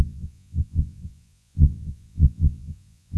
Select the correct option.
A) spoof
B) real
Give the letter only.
A